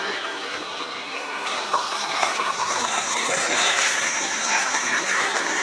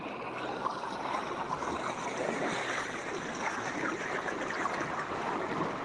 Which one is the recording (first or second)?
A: second